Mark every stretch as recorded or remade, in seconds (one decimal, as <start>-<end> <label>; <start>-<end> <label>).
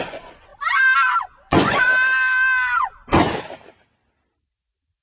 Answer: 0.0-0.5 remade; 0.5-1.2 recorded; 1.2-1.9 remade; 1.9-5.0 recorded